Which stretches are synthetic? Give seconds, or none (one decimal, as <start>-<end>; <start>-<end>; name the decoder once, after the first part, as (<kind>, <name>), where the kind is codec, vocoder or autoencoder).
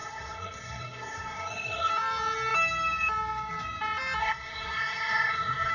0.0-1.9 (codec, SNAC); 4.2-5.7